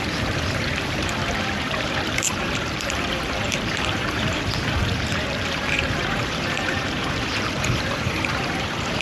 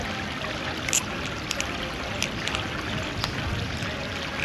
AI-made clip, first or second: first